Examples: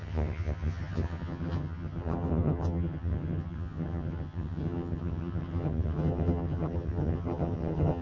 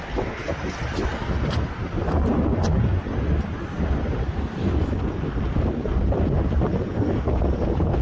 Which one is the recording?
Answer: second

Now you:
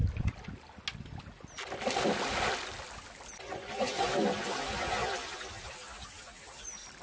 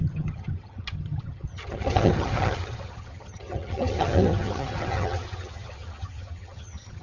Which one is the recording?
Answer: first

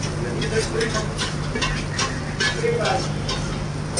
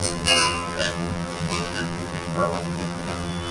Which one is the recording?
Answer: first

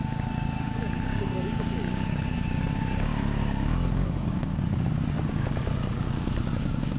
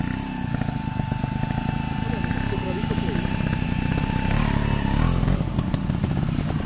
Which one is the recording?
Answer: second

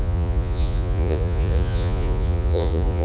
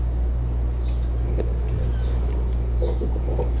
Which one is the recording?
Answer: second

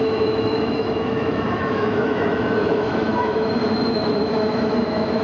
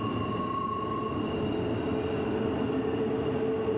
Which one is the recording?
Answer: second